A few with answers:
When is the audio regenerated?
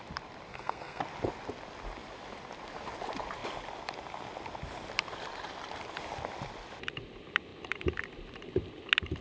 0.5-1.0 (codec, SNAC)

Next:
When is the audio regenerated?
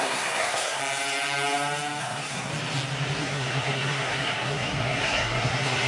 0.0-0.8 (codec, SNAC); 2.0-2.5; 3.2-5.9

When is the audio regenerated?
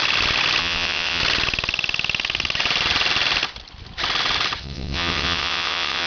0.6-1.2 (vocoder, WaveNeXt); 4.6-6.1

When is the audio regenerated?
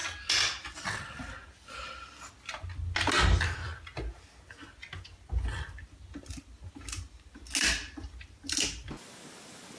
none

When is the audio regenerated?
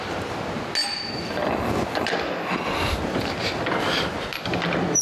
none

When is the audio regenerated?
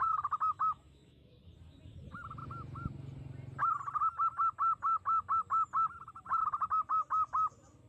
0.5-1.3 (autoencoder, DAC-VAE)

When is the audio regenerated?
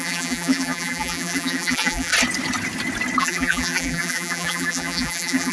0.0-2.1 (vocoder, BigVGAN v2); 3.2-5.5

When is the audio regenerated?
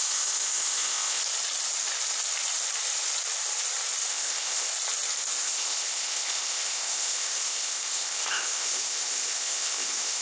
0.0-1.2 (codec, ZipCodec); 4.1-4.7; 5.4-10.2